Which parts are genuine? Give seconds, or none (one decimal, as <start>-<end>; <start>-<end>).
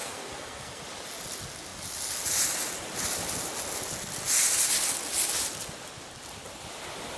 0.8-7.2